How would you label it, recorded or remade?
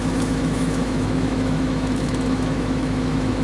remade